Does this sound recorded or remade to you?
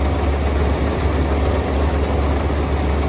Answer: recorded